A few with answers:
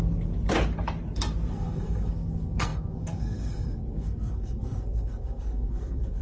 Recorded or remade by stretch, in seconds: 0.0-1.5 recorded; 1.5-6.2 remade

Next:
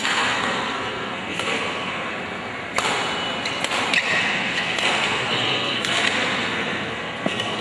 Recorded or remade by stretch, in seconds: 0.0-2.1 remade; 2.1-4.2 recorded; 4.2-7.6 remade

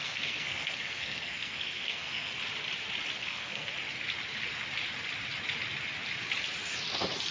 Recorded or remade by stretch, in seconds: 0.0-2.3 remade; 2.3-3.2 recorded; 3.2-3.7 remade; 3.7-7.3 recorded

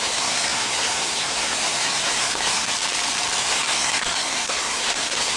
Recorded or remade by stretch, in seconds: 0.0-2.7 remade; 2.7-3.4 recorded; 3.4-5.4 remade